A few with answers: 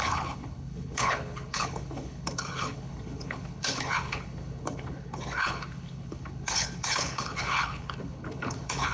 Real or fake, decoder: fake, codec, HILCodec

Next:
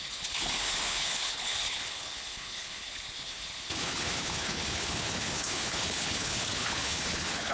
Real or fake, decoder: fake, codec, HILCodec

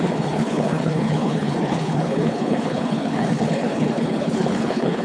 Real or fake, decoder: fake, codec, HILCodec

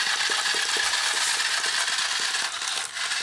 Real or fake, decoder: real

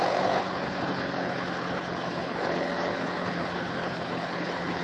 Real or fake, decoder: fake, codec, HILCodec